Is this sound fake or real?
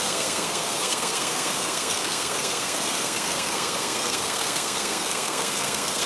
fake